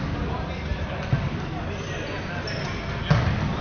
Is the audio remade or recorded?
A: recorded